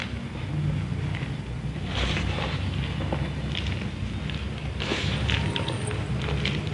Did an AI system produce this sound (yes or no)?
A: no